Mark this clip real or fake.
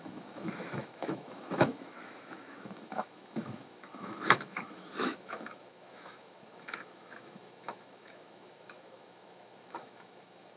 fake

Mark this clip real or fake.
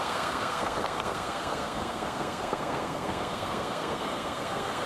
fake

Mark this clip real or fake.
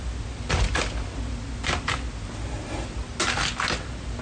real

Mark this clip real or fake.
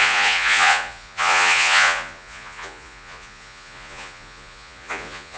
fake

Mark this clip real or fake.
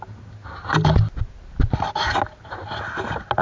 real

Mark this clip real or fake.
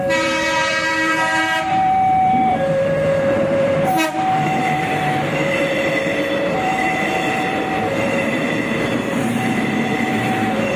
fake